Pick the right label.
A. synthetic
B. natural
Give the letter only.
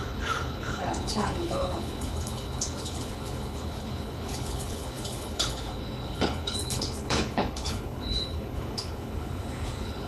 A